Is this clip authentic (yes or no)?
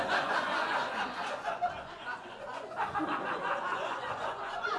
no